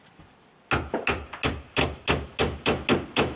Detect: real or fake real